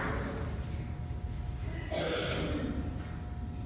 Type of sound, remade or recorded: recorded